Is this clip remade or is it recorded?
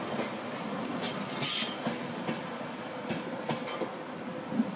recorded